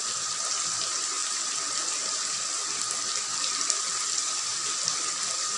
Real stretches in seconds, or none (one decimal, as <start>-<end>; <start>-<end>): 0.0-5.6